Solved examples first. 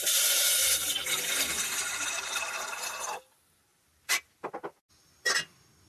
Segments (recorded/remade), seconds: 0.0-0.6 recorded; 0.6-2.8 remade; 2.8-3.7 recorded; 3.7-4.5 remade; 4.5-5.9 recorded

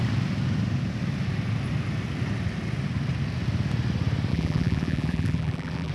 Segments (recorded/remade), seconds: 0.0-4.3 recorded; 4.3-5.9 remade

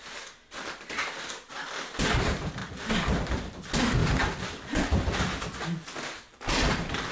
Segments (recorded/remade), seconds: 0.0-6.3 recorded; 6.3-7.1 remade

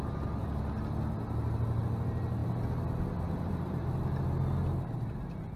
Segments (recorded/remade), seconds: 0.0-2.4 recorded; 2.4-4.0 remade; 4.0-5.6 recorded

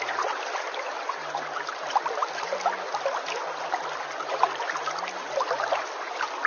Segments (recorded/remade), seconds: 0.0-6.5 recorded

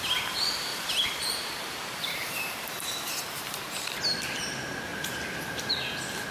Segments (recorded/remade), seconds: 0.0-0.7 recorded; 0.7-4.0 remade; 4.0-4.9 recorded; 4.9-5.7 remade; 5.7-6.3 recorded

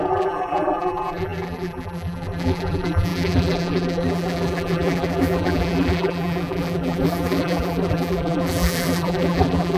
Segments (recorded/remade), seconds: 0.0-9.8 remade